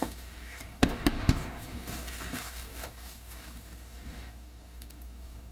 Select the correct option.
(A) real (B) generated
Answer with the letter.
B